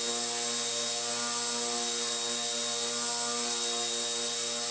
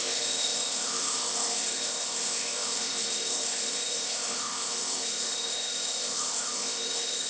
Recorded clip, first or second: first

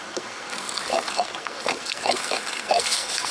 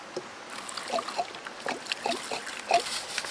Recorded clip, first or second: second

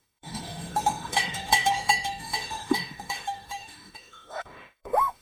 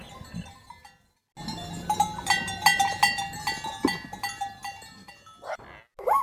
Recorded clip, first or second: second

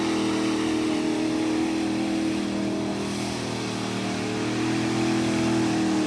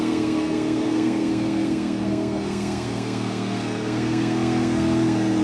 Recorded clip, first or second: first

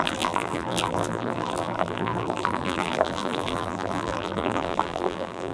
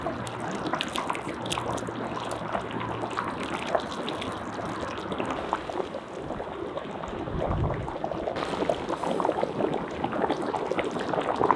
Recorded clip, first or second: second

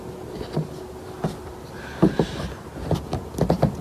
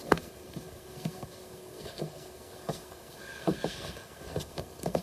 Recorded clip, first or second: first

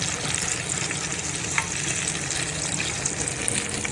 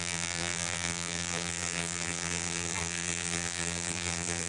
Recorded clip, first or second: first